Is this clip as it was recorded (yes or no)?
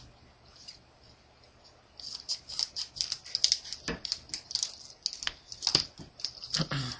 yes